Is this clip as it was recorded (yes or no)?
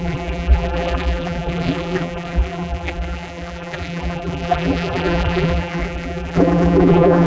no